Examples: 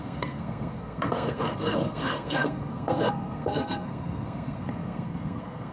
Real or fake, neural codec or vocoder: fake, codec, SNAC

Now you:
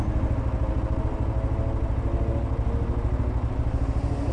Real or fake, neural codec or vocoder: real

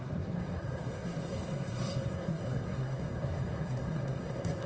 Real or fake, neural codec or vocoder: fake, codec, SNAC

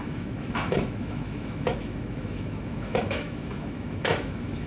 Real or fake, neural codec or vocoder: fake, autoencoder, DAC-VAE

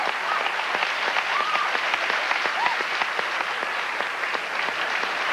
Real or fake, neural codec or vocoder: real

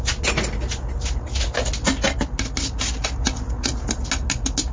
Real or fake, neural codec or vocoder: real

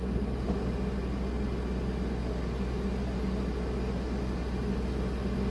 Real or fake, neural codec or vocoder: real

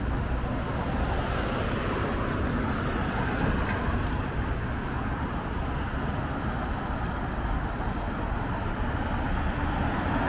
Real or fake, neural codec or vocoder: real